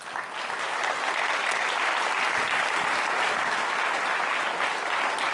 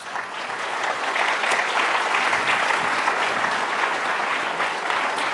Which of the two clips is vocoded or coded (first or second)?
second